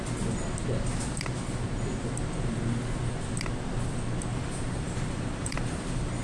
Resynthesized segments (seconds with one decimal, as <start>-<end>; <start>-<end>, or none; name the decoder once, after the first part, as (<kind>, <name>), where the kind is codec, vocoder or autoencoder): 4.3-6.2 (vocoder, BigVGAN v2)